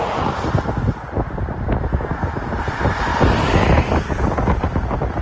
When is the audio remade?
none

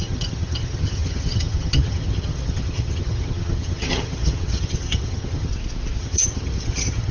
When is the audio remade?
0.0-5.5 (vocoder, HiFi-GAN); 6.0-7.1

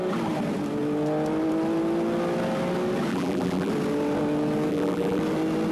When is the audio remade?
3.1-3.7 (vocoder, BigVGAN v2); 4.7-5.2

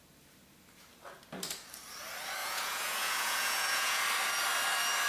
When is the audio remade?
2.4-4.0 (vocoder, Vocos)

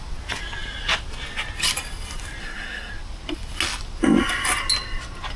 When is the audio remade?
2.4-2.9 (codec, SNAC)

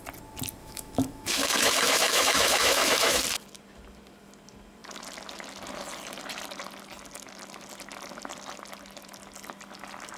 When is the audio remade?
0.6-3.2 (autoencoder, DAC-VAE)

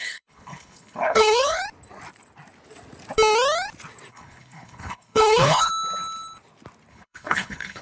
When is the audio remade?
0.0-1.6 (codec, HILCodec); 4.1-5.7; 6.9-7.8

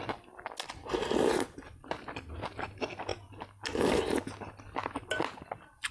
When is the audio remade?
none